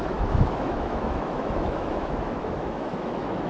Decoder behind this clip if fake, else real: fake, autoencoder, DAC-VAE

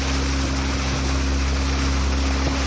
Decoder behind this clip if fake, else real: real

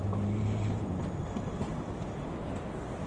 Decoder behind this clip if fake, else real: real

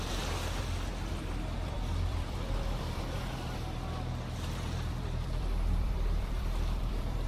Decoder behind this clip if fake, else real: fake, vocoder, BigVGAN v2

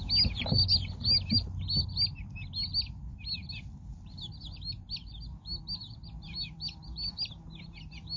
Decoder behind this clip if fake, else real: real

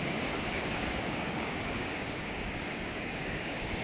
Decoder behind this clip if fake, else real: fake, codec, DAC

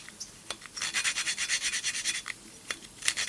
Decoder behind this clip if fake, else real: real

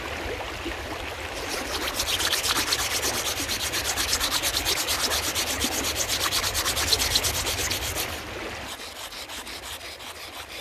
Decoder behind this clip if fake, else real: real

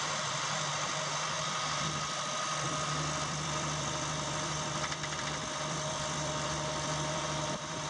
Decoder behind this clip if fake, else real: fake, vocoder, BigVGAN v2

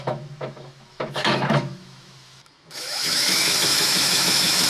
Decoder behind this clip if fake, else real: fake, autoencoder, DAC-VAE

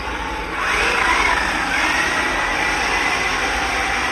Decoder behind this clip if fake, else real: real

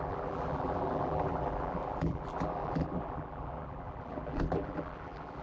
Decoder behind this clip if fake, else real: fake, vocoder, BigVGAN v2